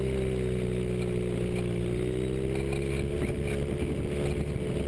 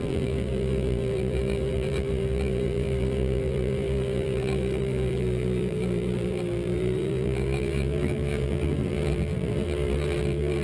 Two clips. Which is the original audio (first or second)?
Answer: first